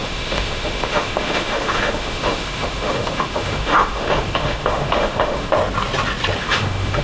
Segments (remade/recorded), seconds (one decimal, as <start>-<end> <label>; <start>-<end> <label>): 0.0-5.5 remade; 5.5-6.4 recorded; 6.4-7.0 remade